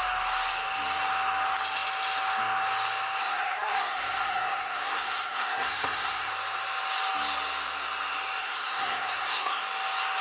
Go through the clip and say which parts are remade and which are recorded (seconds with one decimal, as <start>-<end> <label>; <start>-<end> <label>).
0.0-3.2 recorded; 3.2-6.3 remade; 6.3-8.4 recorded; 8.4-9.6 remade; 9.6-10.2 recorded